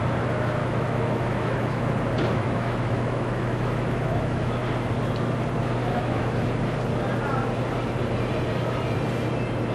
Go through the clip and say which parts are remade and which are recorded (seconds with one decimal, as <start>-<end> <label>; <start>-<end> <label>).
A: 0.0-0.6 recorded; 0.6-1.8 remade; 1.8-2.3 recorded; 2.3-4.6 remade; 4.6-5.8 recorded; 5.8-6.5 remade; 6.5-9.7 recorded